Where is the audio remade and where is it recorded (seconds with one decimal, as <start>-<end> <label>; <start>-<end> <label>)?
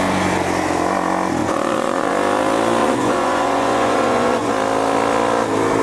0.0-1.4 recorded; 1.4-2.1 remade; 2.1-2.8 recorded; 2.8-4.5 remade; 4.5-5.8 recorded